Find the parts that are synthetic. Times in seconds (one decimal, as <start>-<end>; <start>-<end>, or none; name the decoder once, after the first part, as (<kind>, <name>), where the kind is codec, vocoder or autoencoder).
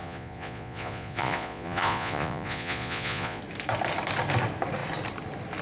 0.0-3.4 (vocoder, Vocos)